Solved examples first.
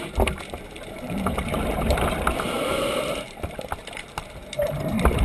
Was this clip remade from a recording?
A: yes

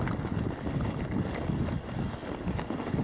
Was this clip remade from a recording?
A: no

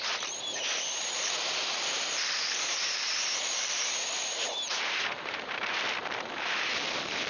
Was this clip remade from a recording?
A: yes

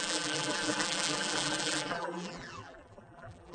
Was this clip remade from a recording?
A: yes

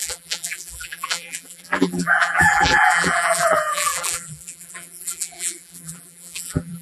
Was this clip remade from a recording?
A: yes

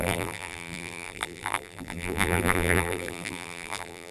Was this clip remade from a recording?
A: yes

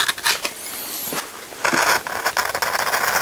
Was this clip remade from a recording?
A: no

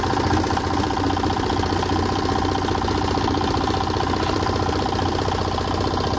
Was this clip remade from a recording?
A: yes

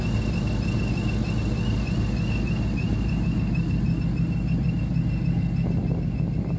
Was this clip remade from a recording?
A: no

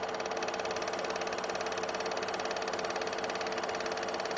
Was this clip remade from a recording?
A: no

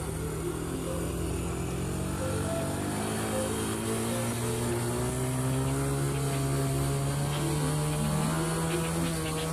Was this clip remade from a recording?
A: no